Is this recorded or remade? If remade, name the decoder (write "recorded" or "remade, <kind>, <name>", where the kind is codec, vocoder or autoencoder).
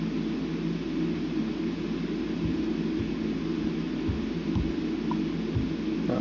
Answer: recorded